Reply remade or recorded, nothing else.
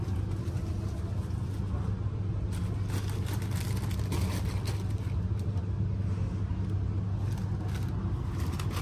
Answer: recorded